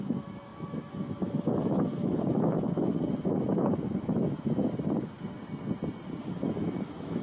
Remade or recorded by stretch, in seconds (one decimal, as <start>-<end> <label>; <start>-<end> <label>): 0.0-2.9 remade; 2.9-3.6 recorded; 3.6-4.7 remade; 4.7-6.2 recorded; 6.2-7.2 remade